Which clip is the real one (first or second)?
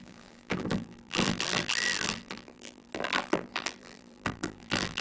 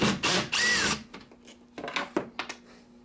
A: second